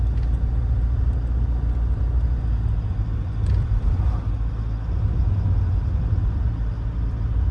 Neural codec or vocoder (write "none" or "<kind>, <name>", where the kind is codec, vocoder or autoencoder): none